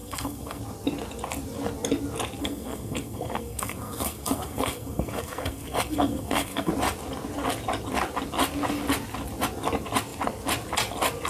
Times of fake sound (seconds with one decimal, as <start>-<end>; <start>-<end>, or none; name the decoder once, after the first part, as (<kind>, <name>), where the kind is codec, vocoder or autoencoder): 0.0-0.6 (codec, SNAC); 2.4-6.7